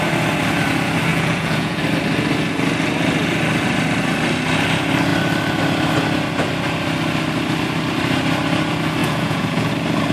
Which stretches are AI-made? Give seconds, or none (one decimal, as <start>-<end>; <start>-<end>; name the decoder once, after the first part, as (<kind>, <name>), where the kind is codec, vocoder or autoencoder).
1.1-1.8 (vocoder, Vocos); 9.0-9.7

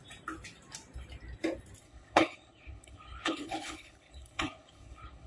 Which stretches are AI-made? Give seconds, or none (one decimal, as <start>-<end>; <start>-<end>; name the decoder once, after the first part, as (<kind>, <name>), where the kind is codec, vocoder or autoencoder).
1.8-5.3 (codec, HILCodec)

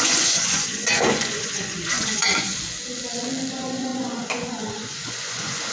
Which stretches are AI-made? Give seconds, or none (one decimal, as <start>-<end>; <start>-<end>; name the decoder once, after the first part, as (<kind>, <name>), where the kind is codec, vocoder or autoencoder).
0.0-2.5 (vocoder, Vocos); 3.5-5.7

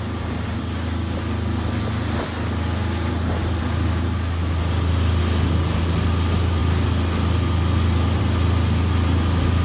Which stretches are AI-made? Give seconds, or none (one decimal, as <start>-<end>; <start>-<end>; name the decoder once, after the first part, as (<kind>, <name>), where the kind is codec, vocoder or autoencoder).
none

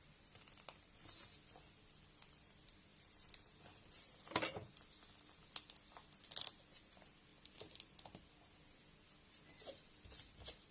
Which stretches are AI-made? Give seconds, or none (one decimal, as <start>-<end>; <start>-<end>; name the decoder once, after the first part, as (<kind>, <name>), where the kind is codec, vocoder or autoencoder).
none